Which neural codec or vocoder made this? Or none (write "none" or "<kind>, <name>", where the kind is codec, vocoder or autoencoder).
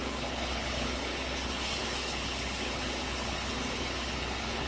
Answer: codec, HILCodec